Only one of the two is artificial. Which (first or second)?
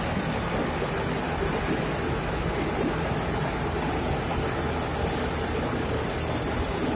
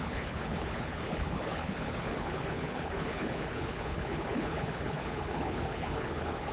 second